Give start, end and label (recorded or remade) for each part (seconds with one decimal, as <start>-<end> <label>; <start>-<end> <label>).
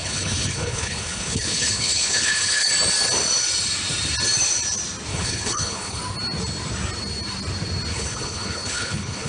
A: 0.0-2.7 remade; 2.7-5.1 recorded; 5.1-6.0 remade; 6.0-7.9 recorded; 7.9-9.3 remade